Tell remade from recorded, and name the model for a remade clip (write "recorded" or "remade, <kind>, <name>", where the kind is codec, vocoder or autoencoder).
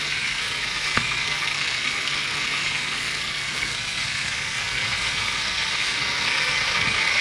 remade, codec, SNAC